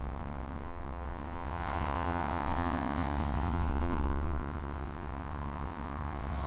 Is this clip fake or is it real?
fake